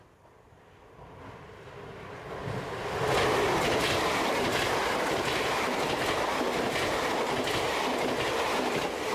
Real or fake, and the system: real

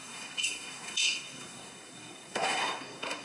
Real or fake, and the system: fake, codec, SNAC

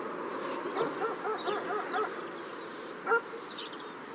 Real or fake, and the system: real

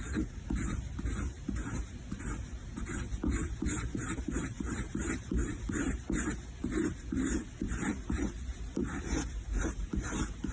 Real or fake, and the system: fake, vocoder, BigVGAN v2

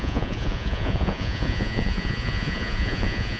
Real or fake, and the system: fake, vocoder, Vocos